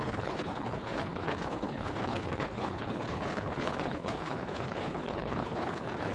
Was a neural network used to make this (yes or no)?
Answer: yes